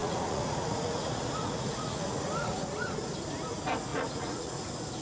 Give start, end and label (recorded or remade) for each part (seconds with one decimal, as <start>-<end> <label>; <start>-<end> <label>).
0.0-3.0 remade; 3.0-3.9 recorded; 3.9-4.6 remade; 4.6-5.0 recorded